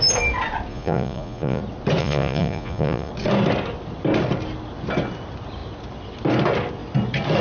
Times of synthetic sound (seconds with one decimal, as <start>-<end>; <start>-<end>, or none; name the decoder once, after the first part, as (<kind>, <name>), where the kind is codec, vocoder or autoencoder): 0.7-1.6 (vocoder, Vocos); 2.0-3.1